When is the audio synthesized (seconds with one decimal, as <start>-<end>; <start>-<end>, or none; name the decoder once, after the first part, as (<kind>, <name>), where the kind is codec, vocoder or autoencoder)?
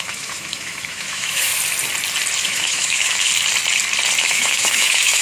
0.0-1.5 (autoencoder, DAC-VAE); 2.4-3.3; 4.2-5.2